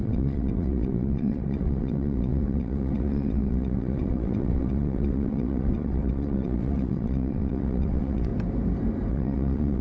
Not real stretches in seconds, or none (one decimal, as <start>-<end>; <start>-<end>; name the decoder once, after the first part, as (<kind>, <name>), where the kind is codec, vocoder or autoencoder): 0.0-8.3 (vocoder, WaveNeXt); 9.1-9.8